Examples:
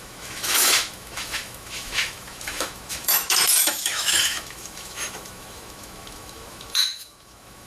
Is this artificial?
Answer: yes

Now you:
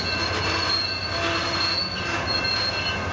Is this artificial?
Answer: no